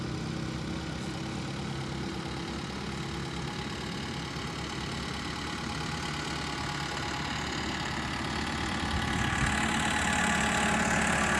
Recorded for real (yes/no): yes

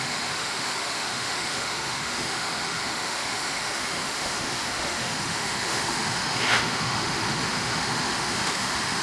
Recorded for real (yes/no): no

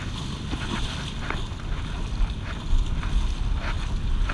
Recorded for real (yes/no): yes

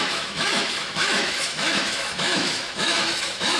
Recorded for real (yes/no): no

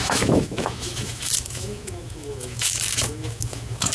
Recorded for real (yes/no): no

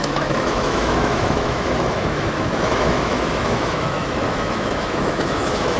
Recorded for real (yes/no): no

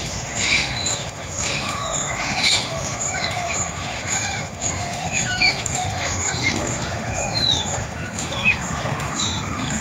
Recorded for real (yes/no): no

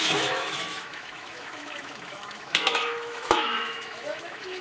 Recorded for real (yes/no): no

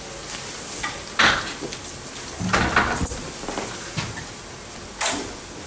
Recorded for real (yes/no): yes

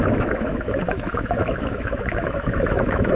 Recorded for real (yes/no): no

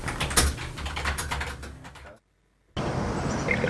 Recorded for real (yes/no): yes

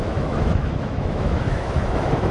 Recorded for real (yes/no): no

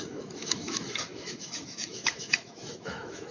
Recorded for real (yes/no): no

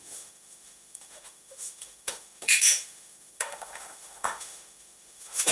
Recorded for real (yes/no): no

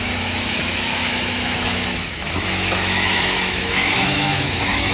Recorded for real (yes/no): no